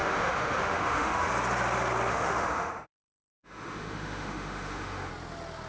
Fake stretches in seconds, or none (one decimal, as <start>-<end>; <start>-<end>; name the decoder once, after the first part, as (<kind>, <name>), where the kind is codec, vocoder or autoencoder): 0.0-1.3 (autoencoder, DAC-VAE); 2.1-5.1